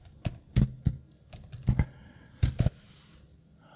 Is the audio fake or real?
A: real